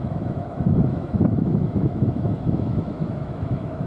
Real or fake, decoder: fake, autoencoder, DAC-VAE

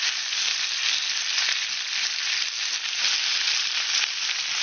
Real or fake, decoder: real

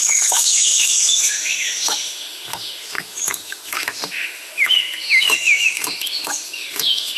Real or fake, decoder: fake, autoencoder, DAC-VAE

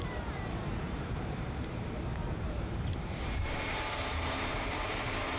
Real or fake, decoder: fake, vocoder, BigVGAN v2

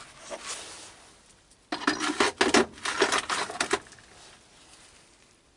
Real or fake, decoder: real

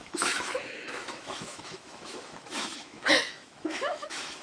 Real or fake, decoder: fake, autoencoder, DAC-VAE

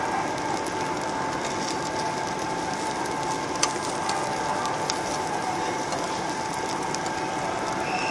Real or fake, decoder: real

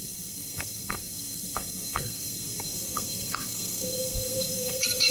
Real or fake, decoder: fake, codec, SNAC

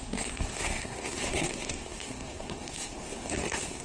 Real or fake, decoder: fake, codec, SNAC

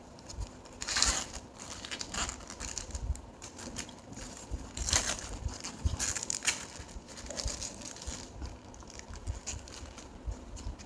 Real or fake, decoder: real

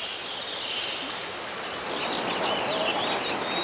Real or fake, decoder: real